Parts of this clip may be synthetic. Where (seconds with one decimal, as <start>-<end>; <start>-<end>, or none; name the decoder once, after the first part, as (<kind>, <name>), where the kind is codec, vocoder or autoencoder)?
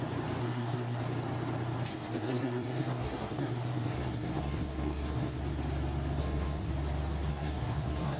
0.4-1.0 (codec, SNAC); 1.9-5.4; 6.2-6.7; 7.3-8.2